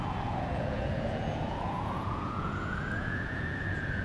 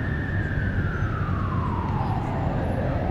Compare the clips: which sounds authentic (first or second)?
second